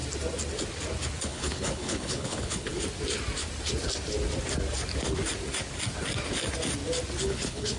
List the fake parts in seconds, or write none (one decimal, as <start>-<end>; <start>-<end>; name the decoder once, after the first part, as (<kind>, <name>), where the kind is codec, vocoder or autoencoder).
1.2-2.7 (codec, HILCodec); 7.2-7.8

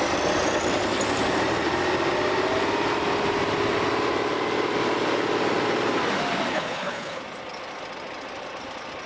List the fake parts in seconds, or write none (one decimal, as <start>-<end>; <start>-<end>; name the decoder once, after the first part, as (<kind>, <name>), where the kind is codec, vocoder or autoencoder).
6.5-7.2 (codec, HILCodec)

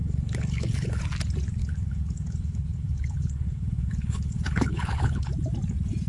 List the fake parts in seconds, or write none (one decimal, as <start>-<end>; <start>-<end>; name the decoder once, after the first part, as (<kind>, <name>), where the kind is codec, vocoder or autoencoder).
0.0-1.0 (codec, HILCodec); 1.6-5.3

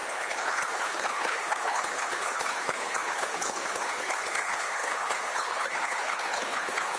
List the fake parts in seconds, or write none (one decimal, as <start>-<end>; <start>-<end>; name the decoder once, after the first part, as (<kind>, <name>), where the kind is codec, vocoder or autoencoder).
0.0-7.0 (codec, HILCodec)